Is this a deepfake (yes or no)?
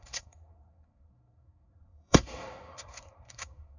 yes